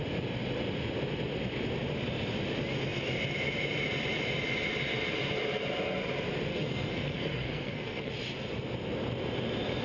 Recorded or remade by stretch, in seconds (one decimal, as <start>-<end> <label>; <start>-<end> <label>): 0.0-6.5 recorded; 6.5-8.1 remade; 8.1-9.8 recorded